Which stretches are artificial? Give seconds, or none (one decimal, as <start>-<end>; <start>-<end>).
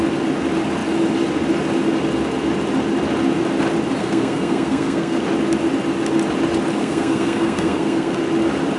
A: 4.0-5.2; 6.8-8.2